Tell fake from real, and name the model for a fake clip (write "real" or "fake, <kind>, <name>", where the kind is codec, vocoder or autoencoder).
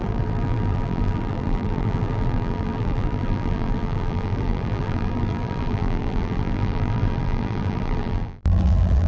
fake, vocoder, BigVGAN v2